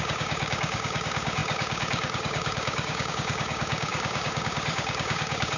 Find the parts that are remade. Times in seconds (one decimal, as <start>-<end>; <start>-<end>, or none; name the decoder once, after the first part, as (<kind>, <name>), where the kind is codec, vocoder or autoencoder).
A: 0.0-5.6 (codec, DAC)